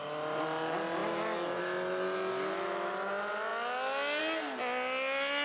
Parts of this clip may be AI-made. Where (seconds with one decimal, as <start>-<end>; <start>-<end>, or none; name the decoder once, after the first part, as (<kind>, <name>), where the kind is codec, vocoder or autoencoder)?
none